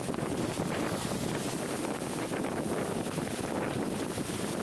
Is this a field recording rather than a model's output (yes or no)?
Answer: yes